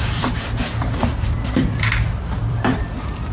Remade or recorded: remade